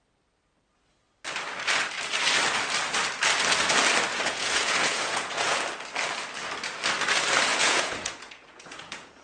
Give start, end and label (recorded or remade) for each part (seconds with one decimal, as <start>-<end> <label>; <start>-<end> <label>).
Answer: 0.0-4.1 recorded; 4.1-5.6 remade; 5.6-7.5 recorded; 7.5-9.2 remade